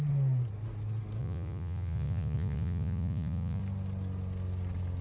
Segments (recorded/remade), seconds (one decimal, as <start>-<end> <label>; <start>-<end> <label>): 0.0-1.2 recorded; 1.2-3.6 remade; 3.6-5.0 recorded